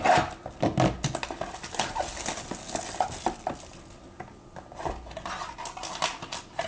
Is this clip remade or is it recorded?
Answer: recorded